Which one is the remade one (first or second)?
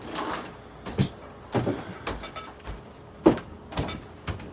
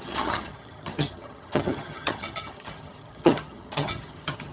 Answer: second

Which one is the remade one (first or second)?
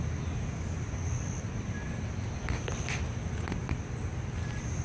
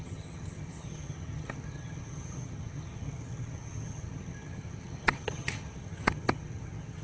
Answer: second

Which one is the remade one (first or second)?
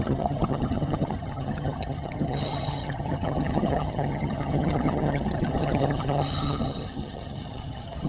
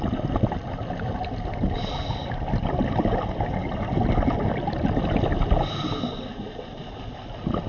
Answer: first